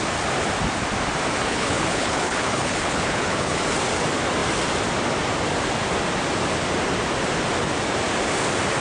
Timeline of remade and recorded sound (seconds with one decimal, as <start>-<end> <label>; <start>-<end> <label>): 0.0-1.4 recorded; 1.4-3.6 remade; 3.6-8.8 recorded